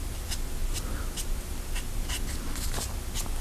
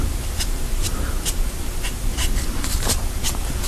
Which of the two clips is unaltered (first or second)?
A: first